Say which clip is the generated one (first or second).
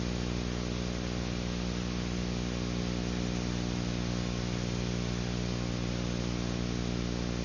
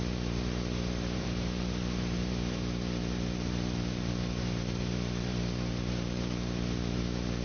second